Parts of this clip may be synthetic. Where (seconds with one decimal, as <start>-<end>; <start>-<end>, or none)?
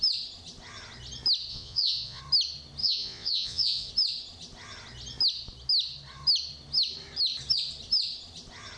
1.5-2.2; 2.8-3.9